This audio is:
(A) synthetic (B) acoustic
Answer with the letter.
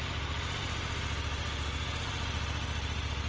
B